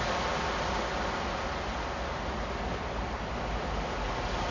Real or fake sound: real